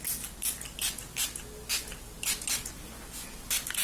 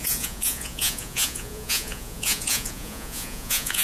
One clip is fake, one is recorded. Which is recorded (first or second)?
first